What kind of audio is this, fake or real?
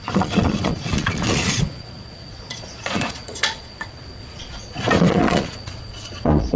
fake